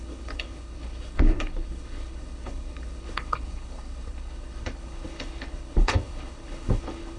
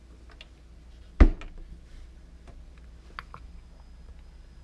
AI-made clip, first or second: first